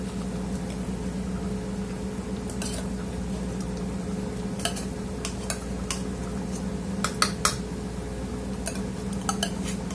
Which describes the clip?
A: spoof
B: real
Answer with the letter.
B